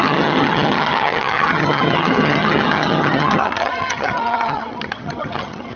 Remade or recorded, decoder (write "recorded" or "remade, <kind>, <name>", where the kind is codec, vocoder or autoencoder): remade, vocoder, HiFi-GAN